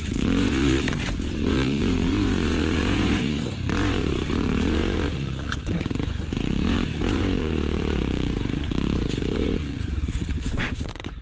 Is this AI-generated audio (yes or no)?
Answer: yes